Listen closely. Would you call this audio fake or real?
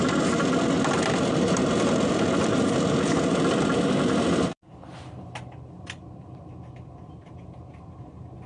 fake